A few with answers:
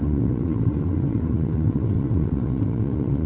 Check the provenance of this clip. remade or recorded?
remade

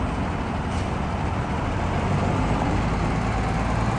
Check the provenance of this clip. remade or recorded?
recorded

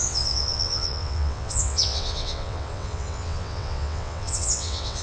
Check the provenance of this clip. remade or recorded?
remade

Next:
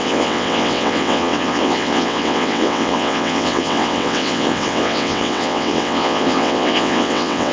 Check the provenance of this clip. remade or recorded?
remade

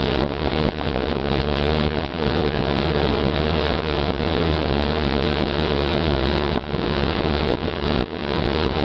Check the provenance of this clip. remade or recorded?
remade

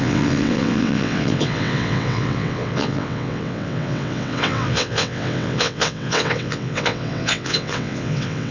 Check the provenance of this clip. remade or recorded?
remade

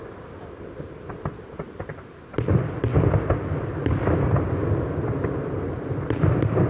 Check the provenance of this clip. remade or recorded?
recorded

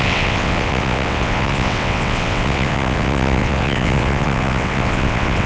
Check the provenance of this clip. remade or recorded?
remade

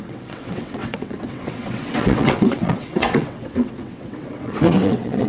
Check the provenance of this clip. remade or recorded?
remade